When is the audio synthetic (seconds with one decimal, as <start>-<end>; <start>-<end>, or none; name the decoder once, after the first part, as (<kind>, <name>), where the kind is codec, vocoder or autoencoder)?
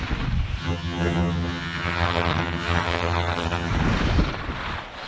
0.6-3.7 (vocoder, HiFi-GAN)